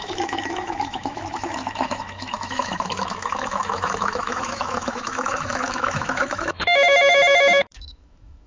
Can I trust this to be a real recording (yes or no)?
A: no